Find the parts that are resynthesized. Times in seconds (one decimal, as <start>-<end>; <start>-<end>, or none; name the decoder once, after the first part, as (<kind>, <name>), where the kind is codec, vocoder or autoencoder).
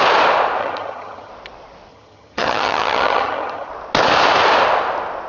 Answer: 0.6-1.3 (vocoder, HiFi-GAN); 1.9-3.7